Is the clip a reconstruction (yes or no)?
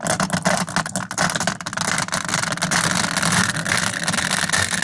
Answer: no